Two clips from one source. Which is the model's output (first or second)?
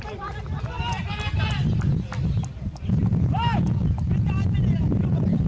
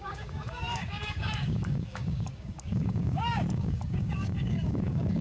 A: second